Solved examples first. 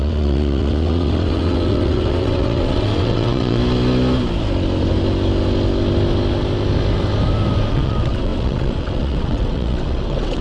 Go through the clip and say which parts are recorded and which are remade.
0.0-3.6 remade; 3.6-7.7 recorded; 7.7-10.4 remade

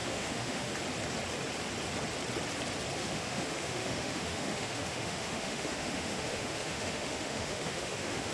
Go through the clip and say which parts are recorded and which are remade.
0.0-0.7 remade; 0.7-3.0 recorded; 3.0-8.3 remade

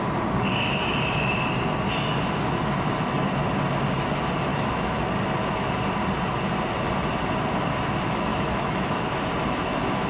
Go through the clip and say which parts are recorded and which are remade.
0.0-4.5 recorded; 4.5-5.0 remade; 5.0-8.3 recorded; 8.3-9.0 remade; 9.0-10.1 recorded

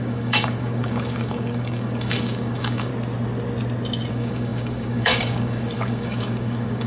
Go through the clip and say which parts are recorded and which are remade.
0.0-2.9 remade; 2.9-4.1 recorded; 4.1-6.9 remade